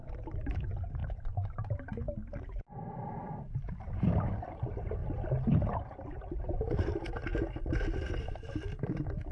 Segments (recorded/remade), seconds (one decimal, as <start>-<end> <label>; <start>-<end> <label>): 0.0-5.0 remade; 5.0-6.1 recorded; 6.1-7.3 remade; 7.3-8.2 recorded; 8.2-9.3 remade